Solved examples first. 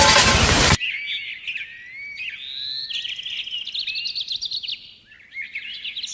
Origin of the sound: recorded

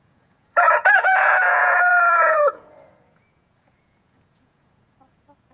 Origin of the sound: remade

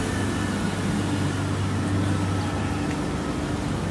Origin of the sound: recorded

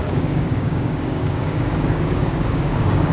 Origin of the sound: remade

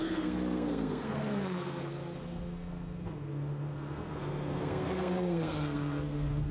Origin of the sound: remade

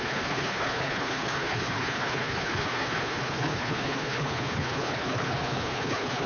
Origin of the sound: remade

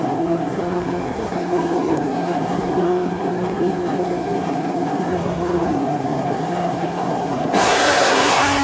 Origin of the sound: remade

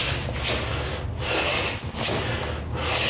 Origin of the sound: recorded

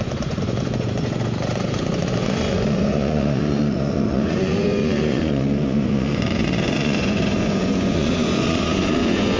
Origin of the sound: remade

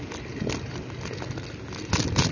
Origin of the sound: recorded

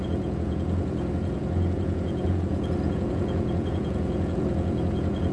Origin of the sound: remade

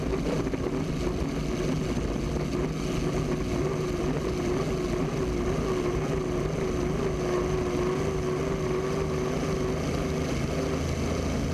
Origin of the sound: recorded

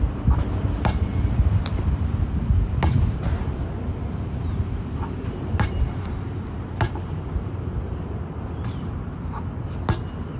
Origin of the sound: recorded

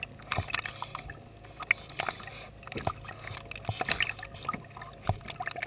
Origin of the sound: recorded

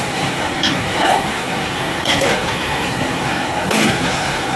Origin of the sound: remade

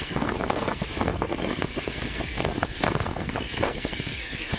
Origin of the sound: remade